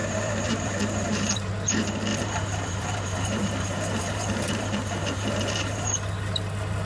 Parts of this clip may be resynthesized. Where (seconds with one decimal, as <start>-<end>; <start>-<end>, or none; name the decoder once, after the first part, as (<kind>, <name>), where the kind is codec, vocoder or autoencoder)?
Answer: 0.0-1.5 (vocoder, BigVGAN v2); 2.1-5.8